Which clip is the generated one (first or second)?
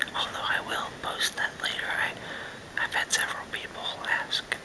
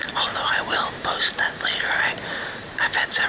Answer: second